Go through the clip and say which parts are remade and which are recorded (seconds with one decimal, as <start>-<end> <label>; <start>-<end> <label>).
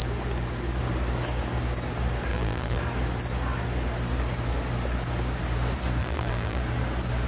0.0-2.3 recorded; 2.3-2.8 remade; 2.8-6.0 recorded; 6.0-6.6 remade; 6.6-7.3 recorded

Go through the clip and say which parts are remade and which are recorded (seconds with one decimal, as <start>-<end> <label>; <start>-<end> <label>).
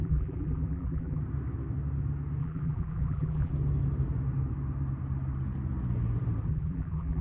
0.0-1.2 remade; 1.2-2.4 recorded; 2.4-3.5 remade; 3.5-6.5 recorded; 6.5-7.2 remade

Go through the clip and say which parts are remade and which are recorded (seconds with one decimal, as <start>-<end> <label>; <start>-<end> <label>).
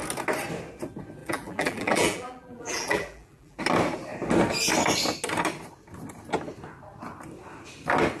0.0-1.2 recorded; 1.2-3.6 remade; 3.6-8.2 recorded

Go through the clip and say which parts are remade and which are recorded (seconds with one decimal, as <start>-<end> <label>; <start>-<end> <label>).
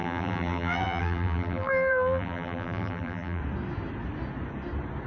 0.0-3.4 remade; 3.4-5.1 recorded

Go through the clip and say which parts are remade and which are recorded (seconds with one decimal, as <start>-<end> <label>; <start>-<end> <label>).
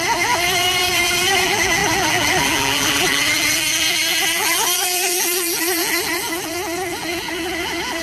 0.0-8.0 remade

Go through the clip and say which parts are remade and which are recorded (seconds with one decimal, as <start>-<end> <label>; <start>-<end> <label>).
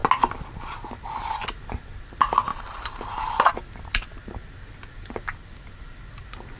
0.0-2.5 recorded; 2.5-3.5 remade; 3.5-6.6 recorded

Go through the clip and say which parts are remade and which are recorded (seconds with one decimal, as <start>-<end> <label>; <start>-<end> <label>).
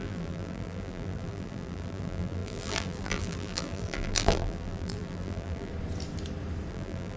0.0-5.7 remade; 5.7-6.7 recorded; 6.7-7.2 remade